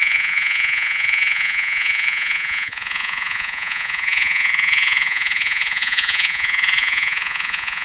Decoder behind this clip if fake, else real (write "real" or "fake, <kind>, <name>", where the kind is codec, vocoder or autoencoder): fake, vocoder, Vocos